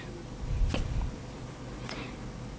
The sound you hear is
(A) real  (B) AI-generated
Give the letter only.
A